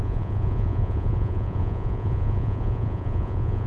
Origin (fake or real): fake